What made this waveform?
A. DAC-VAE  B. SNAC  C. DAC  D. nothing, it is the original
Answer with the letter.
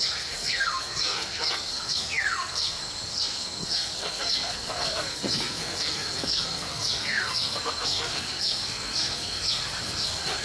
B